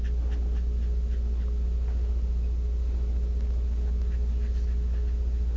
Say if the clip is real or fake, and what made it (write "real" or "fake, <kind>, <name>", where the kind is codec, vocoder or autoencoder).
real